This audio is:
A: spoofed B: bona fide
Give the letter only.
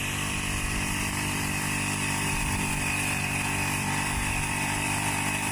A